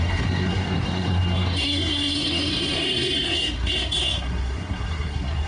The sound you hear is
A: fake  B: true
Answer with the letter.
A